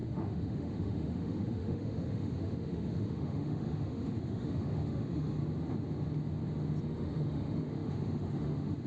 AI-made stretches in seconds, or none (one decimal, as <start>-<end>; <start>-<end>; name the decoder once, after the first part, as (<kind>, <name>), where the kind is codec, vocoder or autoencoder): 0.0-5.4 (autoencoder, DAC-VAE); 6.8-8.9